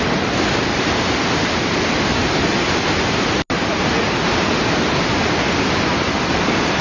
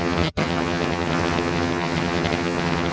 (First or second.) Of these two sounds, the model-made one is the second